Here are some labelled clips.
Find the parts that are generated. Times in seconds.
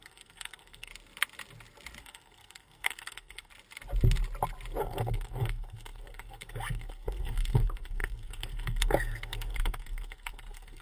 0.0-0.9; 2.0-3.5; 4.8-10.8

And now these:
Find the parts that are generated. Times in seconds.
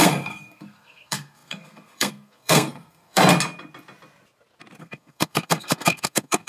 0.0-3.2; 4.8-6.5